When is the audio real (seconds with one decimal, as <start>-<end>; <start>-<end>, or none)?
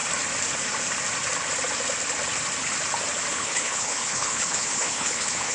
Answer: 0.0-3.3